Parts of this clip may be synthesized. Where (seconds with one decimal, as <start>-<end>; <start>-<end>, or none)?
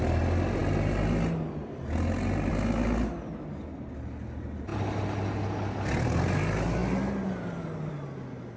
none